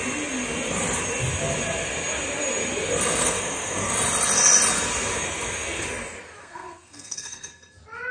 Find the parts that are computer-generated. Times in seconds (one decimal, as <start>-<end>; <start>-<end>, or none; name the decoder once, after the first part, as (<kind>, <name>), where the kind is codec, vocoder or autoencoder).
3.2-3.9 (codec, SNAC); 6.4-7.5